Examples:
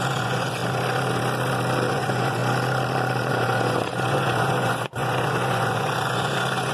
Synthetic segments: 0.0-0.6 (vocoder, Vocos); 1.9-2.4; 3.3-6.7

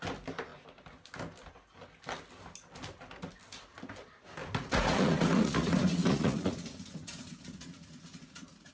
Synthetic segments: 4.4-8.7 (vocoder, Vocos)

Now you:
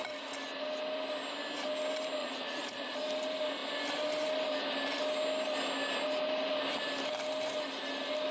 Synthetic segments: 2.2-3.0 (vocoder, Vocos)